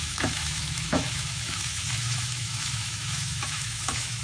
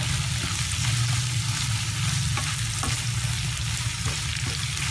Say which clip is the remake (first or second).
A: first